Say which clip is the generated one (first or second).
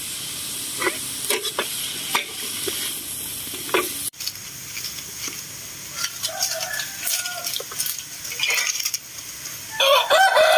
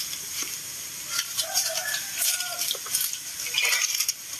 second